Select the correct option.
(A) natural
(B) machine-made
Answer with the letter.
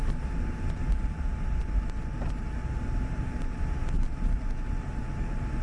B